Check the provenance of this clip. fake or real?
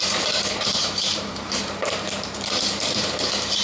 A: fake